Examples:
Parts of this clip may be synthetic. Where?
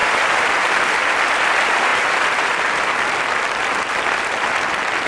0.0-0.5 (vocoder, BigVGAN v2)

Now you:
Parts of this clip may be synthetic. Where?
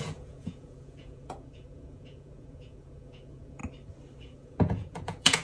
0.0-3.6 (vocoder, Vocos); 4.2-5.4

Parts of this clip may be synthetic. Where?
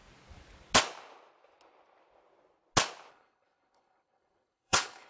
3.1-5.1 (codec, HILCodec)